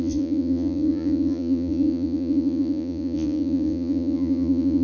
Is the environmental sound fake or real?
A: fake